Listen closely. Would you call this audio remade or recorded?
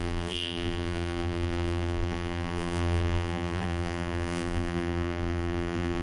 remade